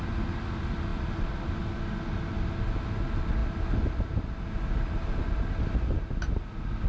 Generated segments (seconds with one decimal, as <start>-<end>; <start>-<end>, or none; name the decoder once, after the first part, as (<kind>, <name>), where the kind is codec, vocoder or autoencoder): none